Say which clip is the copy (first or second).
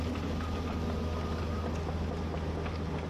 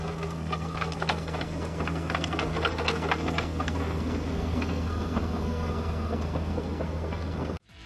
second